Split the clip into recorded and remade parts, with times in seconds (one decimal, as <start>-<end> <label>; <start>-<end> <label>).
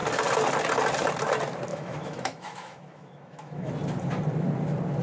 0.0-1.7 recorded; 1.7-3.7 remade; 3.7-5.0 recorded